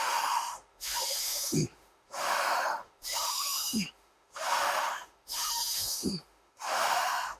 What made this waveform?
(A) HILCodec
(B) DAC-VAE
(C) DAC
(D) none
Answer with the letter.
B